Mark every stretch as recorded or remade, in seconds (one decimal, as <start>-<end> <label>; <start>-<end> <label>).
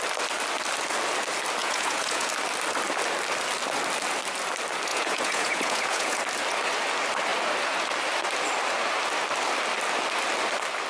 0.0-1.6 recorded; 1.6-2.3 remade; 2.3-4.9 recorded; 4.9-6.2 remade; 6.2-10.9 recorded